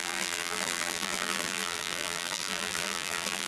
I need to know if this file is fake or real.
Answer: fake